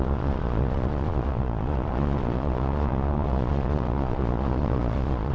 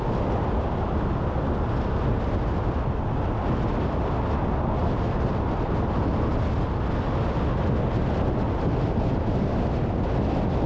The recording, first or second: second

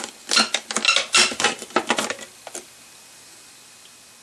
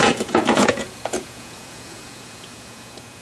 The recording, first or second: first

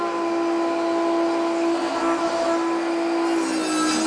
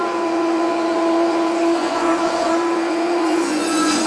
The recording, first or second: first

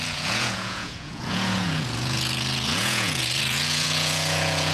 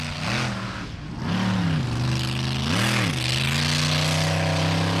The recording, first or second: second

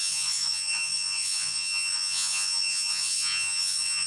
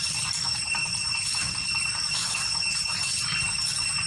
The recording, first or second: second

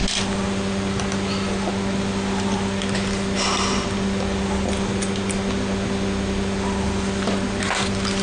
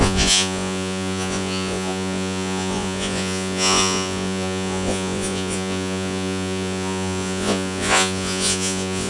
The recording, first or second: first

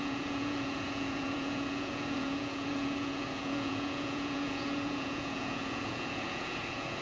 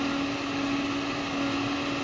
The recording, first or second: second